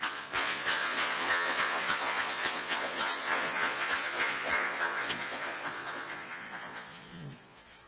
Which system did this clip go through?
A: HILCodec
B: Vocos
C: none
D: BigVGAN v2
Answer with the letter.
B